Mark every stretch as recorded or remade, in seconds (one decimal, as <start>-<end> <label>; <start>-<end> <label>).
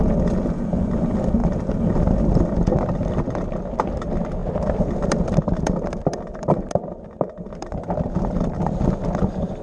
0.0-1.4 recorded; 1.4-2.7 remade; 2.7-4.4 recorded; 4.4-8.6 remade; 8.6-9.6 recorded